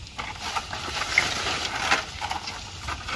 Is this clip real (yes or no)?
yes